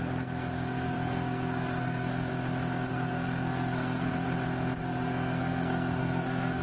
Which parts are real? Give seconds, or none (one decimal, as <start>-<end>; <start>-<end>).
2.3-2.9; 4.1-4.8